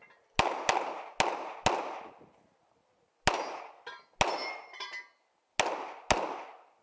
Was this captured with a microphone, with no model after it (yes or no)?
yes